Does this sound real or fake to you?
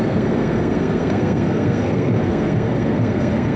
fake